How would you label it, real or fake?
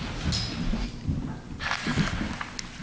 real